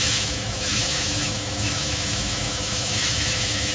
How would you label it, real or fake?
fake